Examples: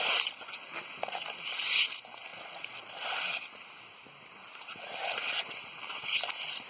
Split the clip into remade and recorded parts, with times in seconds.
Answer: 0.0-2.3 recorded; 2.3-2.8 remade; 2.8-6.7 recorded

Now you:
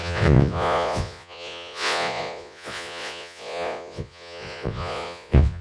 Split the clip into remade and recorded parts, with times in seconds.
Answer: 0.0-5.6 remade

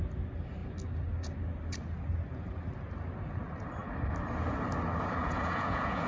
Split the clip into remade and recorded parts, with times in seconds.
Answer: 0.0-5.2 recorded; 5.2-6.1 remade

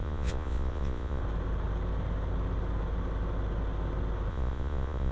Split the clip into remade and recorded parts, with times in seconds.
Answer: 0.0-1.2 remade; 1.2-4.3 recorded; 4.3-5.1 remade